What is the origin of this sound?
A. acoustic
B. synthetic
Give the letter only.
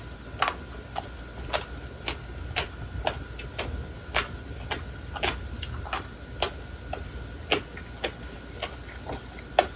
A